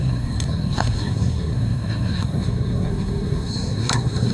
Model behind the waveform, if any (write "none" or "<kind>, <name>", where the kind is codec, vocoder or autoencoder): codec, SNAC